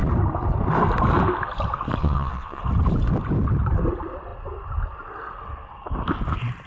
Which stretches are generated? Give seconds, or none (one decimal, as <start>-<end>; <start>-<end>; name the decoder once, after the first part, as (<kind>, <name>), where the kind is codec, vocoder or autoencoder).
2.0-2.6 (vocoder, Vocos)